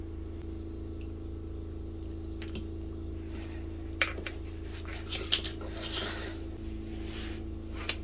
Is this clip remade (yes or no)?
no